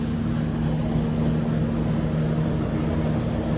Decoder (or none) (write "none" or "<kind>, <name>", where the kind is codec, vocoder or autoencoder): none